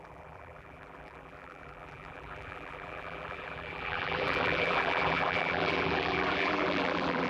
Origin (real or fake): fake